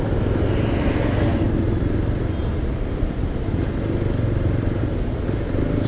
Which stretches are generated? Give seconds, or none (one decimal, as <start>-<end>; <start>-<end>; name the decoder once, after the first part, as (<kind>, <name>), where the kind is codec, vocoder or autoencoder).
none